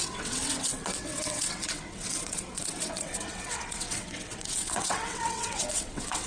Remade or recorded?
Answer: remade